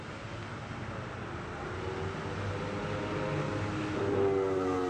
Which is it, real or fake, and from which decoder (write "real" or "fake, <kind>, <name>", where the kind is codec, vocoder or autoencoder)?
fake, vocoder, BigVGAN v2